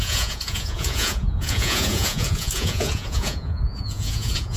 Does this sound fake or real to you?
fake